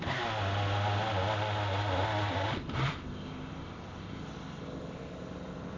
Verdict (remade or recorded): recorded